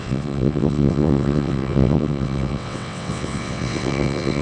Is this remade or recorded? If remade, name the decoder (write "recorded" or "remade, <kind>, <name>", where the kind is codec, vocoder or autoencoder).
remade, vocoder, WaveNeXt